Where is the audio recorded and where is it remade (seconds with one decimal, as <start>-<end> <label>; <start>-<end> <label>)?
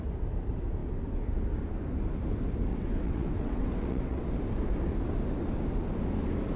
0.0-2.7 recorded; 2.7-4.2 remade; 4.2-6.6 recorded